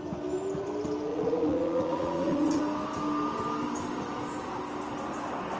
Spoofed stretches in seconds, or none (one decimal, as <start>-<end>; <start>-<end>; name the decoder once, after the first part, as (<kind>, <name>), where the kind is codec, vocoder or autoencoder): 1.1-2.6 (vocoder, Vocos)